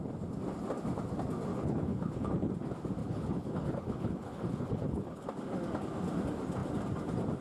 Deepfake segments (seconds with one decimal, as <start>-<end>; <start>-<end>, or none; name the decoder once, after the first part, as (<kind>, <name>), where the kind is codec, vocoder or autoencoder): 1.5-2.5 (codec, HILCodec); 3.0-5.3